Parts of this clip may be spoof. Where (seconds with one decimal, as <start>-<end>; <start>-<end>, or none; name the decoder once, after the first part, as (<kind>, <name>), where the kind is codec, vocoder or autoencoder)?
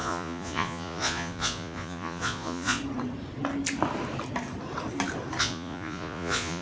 0.0-2.8 (vocoder, Vocos); 5.4-6.6